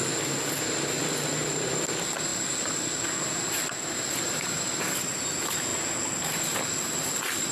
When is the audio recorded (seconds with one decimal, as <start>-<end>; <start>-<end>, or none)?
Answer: 0.0-1.0; 2.3-3.9; 5.7-6.3